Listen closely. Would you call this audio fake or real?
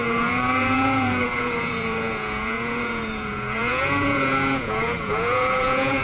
fake